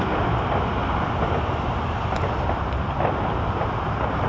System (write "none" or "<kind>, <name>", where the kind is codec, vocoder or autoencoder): none